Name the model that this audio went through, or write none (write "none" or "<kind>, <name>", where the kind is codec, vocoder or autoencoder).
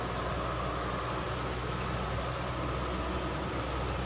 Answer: none